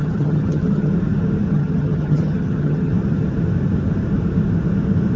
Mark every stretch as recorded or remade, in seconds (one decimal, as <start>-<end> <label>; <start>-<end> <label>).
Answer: 0.0-0.9 remade; 0.9-1.5 recorded; 1.5-2.9 remade; 2.9-5.2 recorded